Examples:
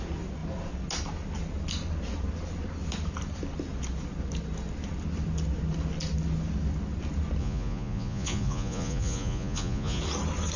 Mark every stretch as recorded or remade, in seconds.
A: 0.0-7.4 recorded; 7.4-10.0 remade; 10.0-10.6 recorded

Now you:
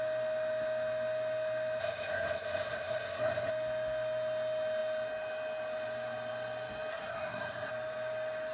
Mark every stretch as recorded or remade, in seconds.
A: 0.0-1.8 recorded; 1.8-3.5 remade; 3.5-6.9 recorded; 6.9-7.7 remade; 7.7-8.5 recorded

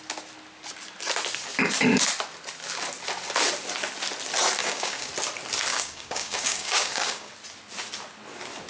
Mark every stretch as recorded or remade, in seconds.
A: 0.0-4.6 recorded; 4.6-5.1 remade; 5.1-5.7 recorded; 5.7-7.3 remade; 7.3-8.7 recorded

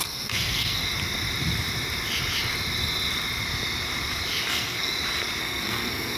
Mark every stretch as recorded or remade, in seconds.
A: 0.0-0.8 remade; 0.8-4.5 recorded; 4.5-4.9 remade; 4.9-5.4 recorded; 5.4-6.2 remade

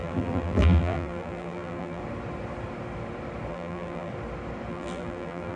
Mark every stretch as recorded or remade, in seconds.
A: 0.0-2.0 remade; 2.0-3.5 recorded; 3.5-4.1 remade; 4.1-4.7 recorded; 4.7-5.6 remade

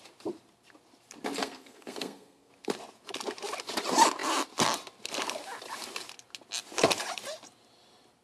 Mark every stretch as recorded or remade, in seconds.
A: 0.0-1.4 recorded; 1.4-2.5 remade; 2.5-8.2 recorded

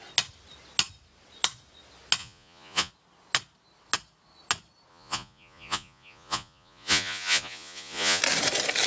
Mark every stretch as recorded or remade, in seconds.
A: 0.0-2.2 recorded; 2.2-2.9 remade; 2.9-4.9 recorded; 4.9-8.2 remade; 8.2-8.9 recorded

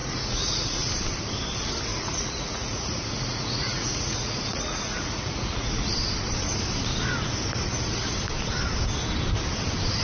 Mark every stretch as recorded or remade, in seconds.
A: 0.0-0.9 remade; 0.9-1.9 recorded; 1.9-5.9 remade; 5.9-10.0 recorded